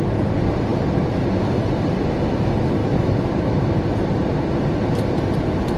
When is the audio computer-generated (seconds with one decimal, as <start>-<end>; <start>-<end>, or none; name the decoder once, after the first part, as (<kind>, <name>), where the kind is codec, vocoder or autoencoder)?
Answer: 2.8-3.8 (autoencoder, DAC-VAE)